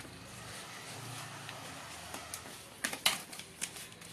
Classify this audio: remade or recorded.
recorded